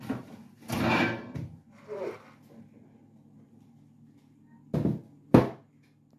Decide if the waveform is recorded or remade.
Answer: recorded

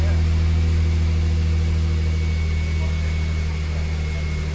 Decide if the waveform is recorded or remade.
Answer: recorded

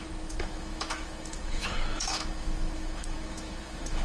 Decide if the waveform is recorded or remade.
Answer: remade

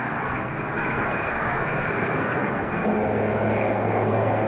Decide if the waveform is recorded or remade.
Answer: remade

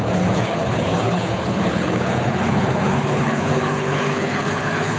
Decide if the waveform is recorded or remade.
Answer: remade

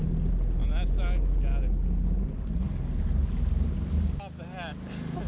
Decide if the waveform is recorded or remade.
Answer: recorded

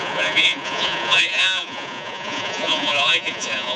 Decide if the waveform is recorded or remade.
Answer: remade